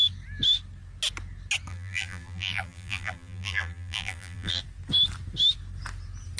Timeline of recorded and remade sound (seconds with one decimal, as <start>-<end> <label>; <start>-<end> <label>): 0.0-1.7 recorded; 1.7-4.6 remade; 4.6-6.4 recorded